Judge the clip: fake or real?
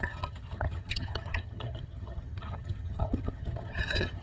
fake